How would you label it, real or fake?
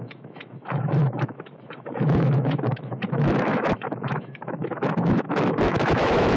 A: fake